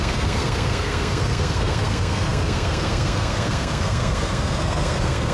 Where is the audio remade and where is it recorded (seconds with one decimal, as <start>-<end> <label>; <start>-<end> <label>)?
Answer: 0.0-5.3 remade